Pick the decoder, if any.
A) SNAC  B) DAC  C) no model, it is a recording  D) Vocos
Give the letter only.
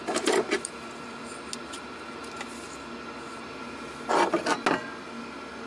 C